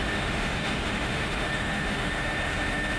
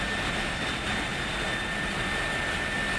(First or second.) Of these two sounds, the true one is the second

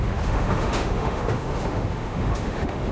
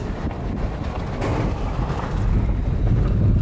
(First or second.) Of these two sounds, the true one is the second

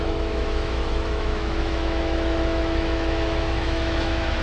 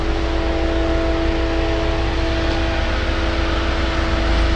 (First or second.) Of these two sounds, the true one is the second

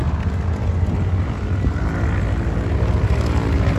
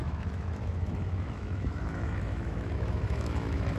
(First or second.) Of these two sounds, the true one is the first